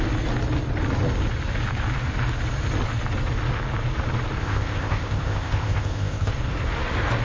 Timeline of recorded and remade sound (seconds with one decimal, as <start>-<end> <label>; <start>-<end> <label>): 0.0-4.4 recorded; 4.4-6.3 remade; 6.3-7.2 recorded